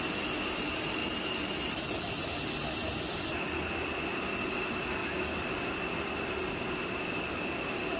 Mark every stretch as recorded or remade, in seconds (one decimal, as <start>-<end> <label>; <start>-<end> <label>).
0.0-8.0 recorded